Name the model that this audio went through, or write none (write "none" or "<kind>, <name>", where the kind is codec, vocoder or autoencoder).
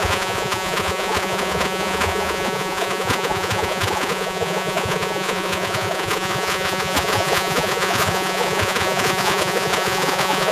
vocoder, Vocos